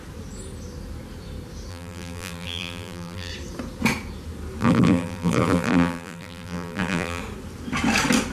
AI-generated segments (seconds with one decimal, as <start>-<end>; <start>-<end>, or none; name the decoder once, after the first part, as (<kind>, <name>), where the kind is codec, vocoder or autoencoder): 1.7-3.3 (vocoder, BigVGAN v2); 4.6-7.2